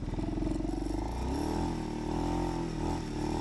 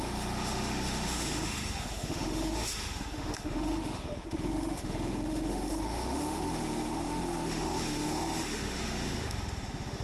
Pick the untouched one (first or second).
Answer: first